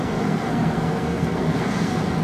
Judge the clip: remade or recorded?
remade